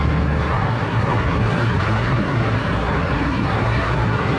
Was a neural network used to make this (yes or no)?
yes